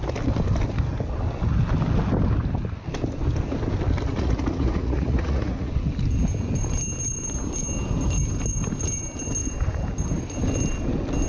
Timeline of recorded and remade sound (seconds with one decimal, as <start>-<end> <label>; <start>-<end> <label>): 0.0-4.1 recorded; 4.1-5.7 remade; 5.7-11.3 recorded